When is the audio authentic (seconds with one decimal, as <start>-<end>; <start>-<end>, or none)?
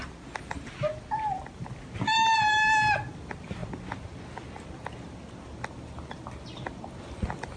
0.0-7.6